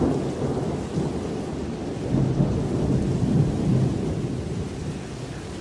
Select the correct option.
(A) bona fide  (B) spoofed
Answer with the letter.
A